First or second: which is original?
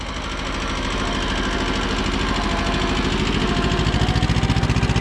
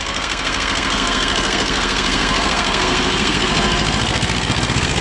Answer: first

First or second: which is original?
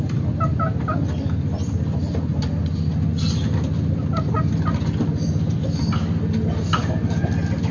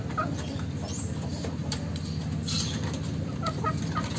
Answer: first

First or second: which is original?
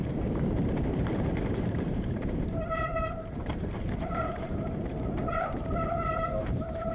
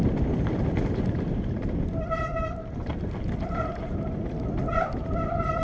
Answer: second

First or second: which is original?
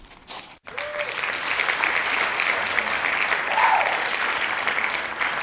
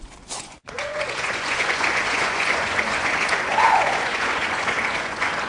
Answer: first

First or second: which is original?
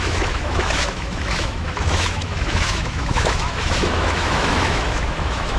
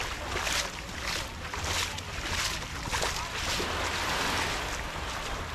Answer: second